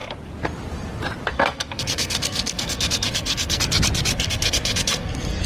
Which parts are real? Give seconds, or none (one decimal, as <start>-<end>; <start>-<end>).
0.0-1.3; 3.6-4.1